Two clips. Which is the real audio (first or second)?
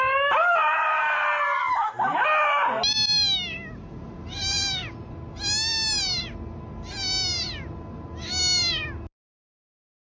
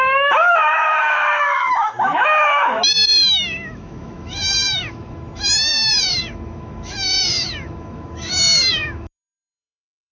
first